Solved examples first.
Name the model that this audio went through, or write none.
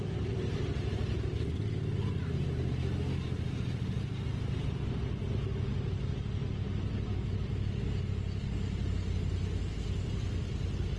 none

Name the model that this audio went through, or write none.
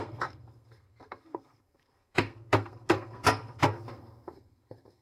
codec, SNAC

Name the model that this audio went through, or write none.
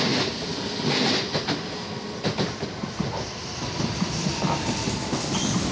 none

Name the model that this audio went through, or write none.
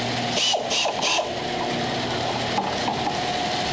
none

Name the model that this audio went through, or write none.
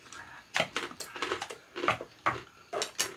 none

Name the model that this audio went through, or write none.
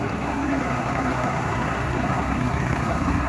codec, SNAC